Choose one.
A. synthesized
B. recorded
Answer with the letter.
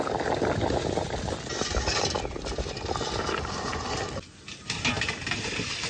B